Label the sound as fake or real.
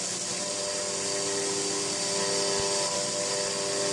real